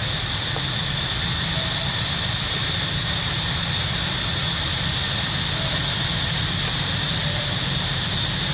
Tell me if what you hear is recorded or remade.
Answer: recorded